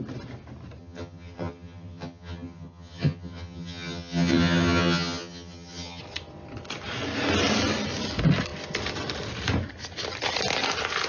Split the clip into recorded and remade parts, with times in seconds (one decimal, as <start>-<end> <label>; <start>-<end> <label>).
0.0-0.8 recorded; 0.8-6.0 remade; 6.0-11.1 recorded